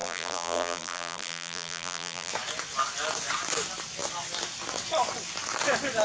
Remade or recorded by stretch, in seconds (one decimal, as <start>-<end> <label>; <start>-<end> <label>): 0.0-2.3 remade; 2.3-6.0 recorded